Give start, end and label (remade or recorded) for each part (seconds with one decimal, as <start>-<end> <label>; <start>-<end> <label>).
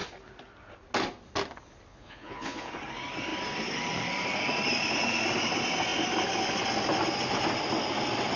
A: 0.0-1.9 recorded; 1.9-2.7 remade; 2.7-8.4 recorded